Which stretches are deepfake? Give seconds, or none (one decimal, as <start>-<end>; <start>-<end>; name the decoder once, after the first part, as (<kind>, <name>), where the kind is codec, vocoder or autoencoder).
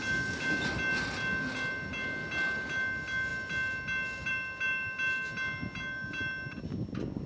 none